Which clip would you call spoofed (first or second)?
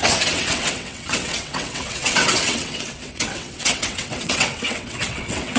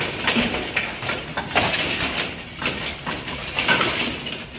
first